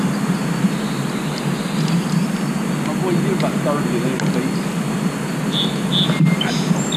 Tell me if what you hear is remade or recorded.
recorded